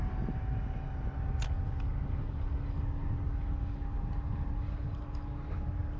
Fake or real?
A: real